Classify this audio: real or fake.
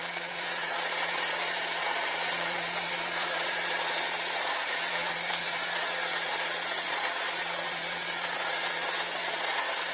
fake